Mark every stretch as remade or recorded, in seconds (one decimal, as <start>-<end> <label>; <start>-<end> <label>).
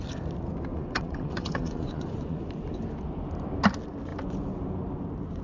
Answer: 0.0-0.7 recorded; 0.7-2.5 remade; 2.5-5.4 recorded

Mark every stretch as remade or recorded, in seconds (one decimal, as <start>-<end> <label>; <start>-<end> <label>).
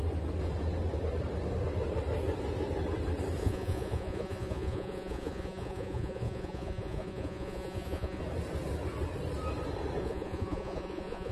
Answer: 0.0-3.4 recorded; 3.4-8.2 remade; 8.2-10.0 recorded; 10.0-11.3 remade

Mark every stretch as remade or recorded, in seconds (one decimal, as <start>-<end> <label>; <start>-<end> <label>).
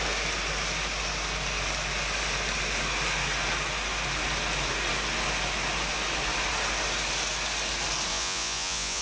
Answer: 0.0-8.1 recorded; 8.1-9.0 remade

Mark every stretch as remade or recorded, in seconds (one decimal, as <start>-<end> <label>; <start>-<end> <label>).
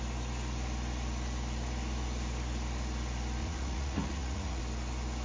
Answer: 0.0-3.4 recorded; 3.4-4.6 remade; 4.6-5.2 recorded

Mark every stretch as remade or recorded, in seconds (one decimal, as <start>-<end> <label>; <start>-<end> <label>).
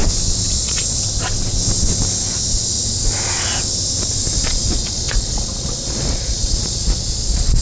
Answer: 0.0-0.5 recorded; 0.5-1.0 remade; 1.0-4.5 recorded; 4.5-7.6 remade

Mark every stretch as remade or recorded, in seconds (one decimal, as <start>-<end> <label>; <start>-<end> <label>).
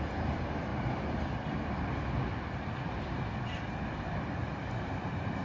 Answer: 0.0-5.4 recorded